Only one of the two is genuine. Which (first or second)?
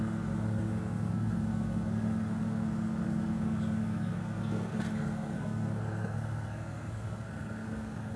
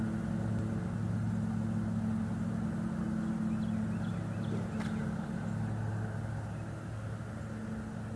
second